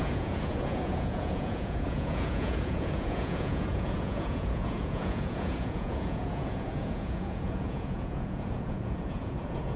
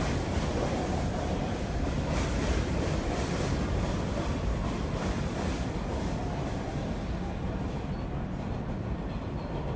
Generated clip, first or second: first